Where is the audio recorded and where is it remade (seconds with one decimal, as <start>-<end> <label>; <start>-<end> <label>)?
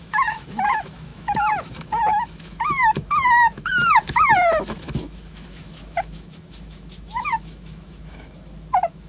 0.0-9.1 remade